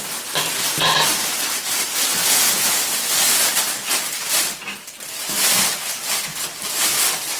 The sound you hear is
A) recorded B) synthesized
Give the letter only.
A